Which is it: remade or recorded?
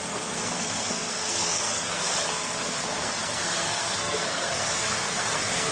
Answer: remade